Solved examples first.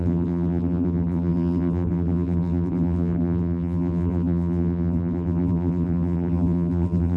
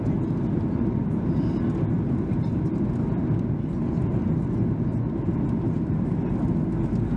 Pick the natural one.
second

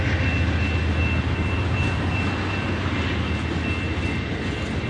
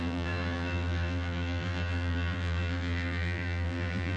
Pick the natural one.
first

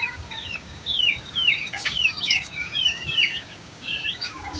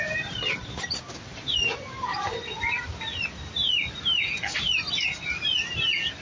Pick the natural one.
second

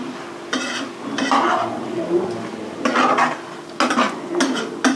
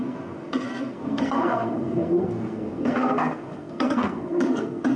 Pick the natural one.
first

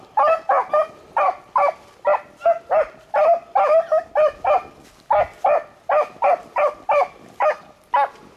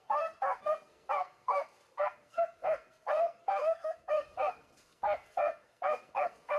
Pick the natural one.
first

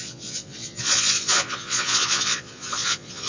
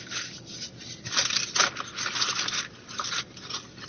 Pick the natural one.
second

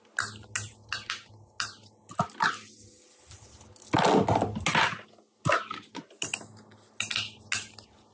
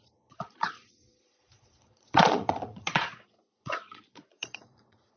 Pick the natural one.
first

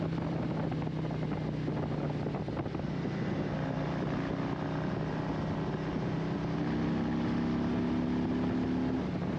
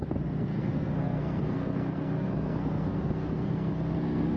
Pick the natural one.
first